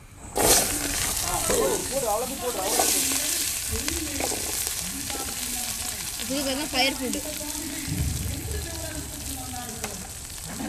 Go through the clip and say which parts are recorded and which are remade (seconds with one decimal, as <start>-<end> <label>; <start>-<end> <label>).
0.0-1.8 recorded; 1.8-2.5 remade; 2.5-10.7 recorded